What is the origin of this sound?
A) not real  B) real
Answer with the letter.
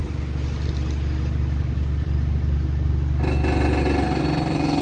B